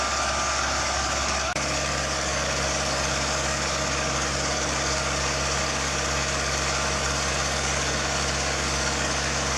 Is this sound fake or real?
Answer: fake